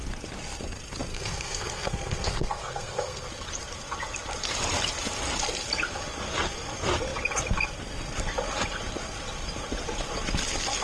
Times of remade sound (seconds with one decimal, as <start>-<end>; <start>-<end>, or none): 1.1-3.3